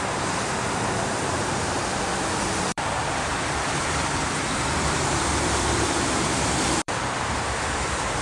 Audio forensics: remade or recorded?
remade